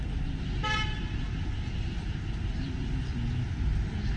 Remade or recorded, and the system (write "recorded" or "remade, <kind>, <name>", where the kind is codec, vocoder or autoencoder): recorded